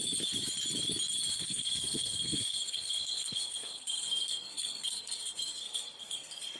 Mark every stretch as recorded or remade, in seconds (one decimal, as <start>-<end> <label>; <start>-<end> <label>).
0.0-1.3 recorded; 1.3-6.6 remade